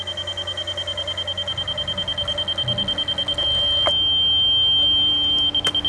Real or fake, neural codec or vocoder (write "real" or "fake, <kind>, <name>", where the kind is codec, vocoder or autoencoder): real